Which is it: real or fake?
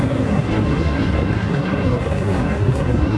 fake